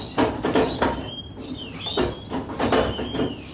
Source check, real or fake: real